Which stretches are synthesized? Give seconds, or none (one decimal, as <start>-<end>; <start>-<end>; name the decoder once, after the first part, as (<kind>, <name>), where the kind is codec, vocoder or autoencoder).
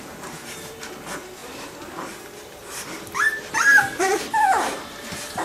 0.0-5.4 (vocoder, BigVGAN v2)